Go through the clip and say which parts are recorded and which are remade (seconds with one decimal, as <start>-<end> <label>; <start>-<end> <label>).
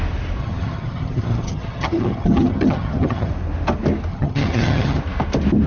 0.0-0.4 recorded; 0.4-3.3 remade; 3.3-4.1 recorded; 4.1-5.0 remade; 5.0-5.7 recorded